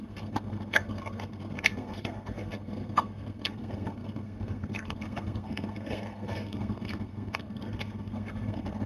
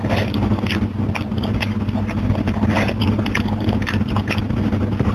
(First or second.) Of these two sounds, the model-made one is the first